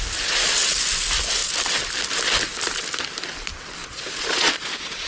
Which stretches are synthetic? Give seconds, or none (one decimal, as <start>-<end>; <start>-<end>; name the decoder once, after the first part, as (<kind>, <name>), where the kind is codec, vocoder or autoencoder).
3.8-4.5 (vocoder, Vocos)